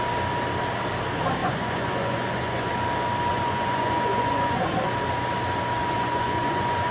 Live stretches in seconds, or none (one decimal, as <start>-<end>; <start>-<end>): 0.0-1.4; 2.7-3.3; 4.7-5.8

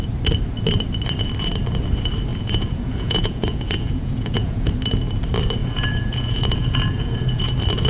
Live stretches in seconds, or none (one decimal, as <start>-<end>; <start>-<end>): 0.0-2.3; 4.7-5.6; 7.4-7.9

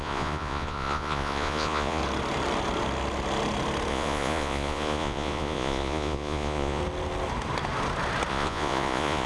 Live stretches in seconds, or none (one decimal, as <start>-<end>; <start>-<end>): 2.0-3.9; 6.8-8.3